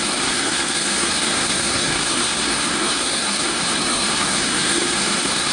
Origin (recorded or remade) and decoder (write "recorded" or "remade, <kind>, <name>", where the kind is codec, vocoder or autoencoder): remade, codec, SNAC